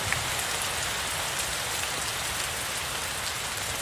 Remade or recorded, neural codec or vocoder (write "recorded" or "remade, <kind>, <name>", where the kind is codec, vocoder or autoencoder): recorded